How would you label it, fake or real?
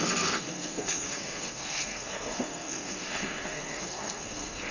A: fake